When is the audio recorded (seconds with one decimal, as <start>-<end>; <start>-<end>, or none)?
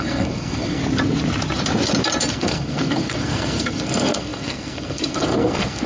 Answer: 0.8-2.3